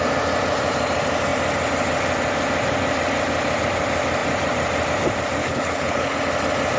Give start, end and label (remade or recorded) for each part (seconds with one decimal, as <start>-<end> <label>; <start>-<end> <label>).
0.0-5.4 recorded; 5.4-6.2 remade; 6.2-6.8 recorded

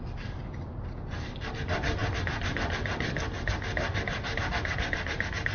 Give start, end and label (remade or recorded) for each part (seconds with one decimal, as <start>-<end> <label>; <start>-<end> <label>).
0.0-5.5 recorded

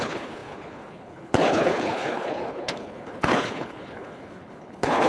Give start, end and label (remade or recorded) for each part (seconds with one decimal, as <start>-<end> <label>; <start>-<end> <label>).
0.0-5.1 remade

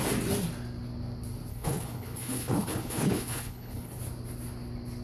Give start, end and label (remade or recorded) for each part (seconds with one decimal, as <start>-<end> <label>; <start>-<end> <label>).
0.0-1.5 recorded; 1.5-4.0 remade; 4.0-5.0 recorded